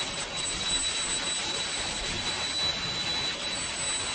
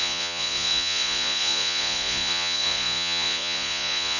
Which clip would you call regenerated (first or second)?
second